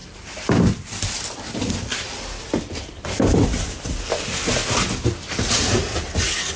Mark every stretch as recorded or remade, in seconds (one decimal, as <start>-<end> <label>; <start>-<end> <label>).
0.0-4.0 remade; 4.0-6.6 recorded